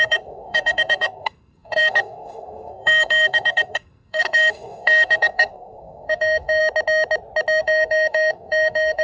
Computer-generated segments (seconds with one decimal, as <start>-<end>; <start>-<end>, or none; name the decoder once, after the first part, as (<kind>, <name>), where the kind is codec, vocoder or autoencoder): 0.0-6.6 (codec, SNAC); 7.6-9.0

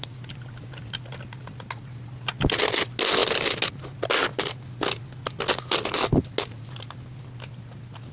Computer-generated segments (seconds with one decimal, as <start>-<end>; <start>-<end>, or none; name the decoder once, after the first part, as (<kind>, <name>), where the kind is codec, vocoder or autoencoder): none

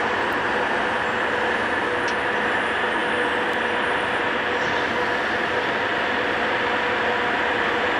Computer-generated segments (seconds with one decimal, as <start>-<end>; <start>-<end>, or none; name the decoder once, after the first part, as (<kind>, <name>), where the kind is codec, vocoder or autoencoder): none

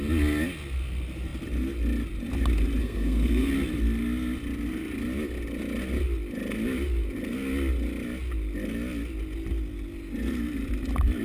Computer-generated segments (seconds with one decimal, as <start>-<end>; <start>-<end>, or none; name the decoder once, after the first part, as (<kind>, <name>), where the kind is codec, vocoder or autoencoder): 2.8-3.5 (codec, SNAC)

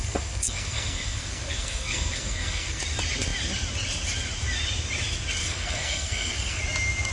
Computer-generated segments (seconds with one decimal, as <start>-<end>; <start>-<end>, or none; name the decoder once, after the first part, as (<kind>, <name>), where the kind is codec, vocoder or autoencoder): 0.0-2.8 (codec, SNAC); 5.4-6.6

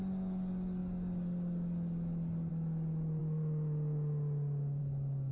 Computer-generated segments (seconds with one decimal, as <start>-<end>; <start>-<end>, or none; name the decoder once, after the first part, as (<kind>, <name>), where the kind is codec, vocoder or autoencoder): none